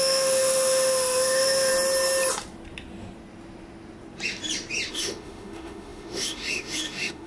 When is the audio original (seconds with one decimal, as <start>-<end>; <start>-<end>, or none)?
1.7-4.9